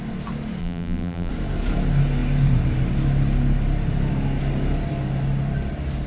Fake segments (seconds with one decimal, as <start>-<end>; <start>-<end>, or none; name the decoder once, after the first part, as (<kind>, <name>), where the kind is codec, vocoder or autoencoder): 0.6-1.3 (vocoder, BigVGAN v2)